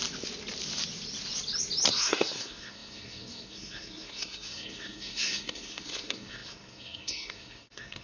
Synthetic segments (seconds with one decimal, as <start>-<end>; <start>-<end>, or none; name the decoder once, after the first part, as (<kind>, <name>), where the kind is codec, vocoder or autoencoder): 1.9-8.0 (codec, SNAC)